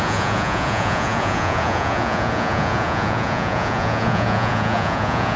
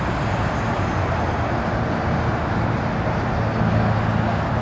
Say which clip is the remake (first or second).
first